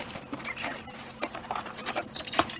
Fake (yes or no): no